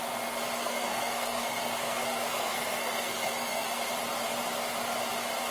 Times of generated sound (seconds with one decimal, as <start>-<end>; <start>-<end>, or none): 0.6-3.9